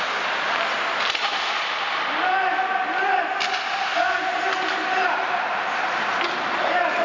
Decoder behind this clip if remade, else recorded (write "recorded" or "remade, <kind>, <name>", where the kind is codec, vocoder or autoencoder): recorded